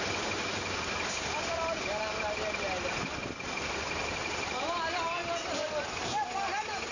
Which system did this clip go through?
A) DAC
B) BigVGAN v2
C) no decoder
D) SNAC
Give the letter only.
C